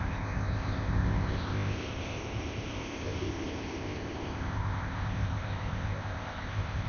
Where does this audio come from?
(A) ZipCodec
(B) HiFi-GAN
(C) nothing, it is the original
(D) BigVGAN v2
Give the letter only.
A